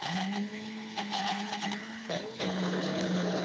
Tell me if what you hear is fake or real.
fake